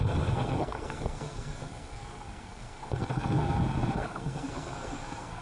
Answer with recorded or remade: remade